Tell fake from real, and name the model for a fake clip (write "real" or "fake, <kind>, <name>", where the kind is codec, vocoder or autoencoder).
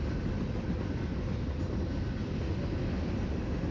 real